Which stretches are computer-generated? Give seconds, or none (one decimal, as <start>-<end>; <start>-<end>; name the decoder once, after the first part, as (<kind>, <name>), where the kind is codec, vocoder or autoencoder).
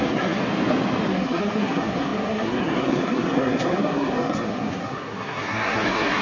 0.0-0.4 (codec, SNAC); 1.1-6.2